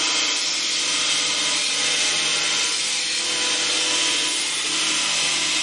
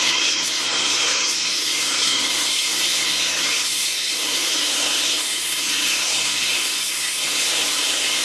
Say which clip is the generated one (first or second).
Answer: second